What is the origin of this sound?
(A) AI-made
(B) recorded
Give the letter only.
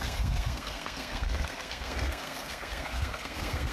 A